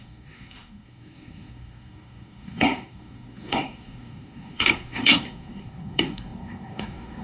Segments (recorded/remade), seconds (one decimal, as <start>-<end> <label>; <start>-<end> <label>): 0.0-7.2 remade